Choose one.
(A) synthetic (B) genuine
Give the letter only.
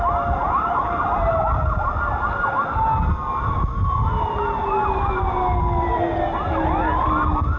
B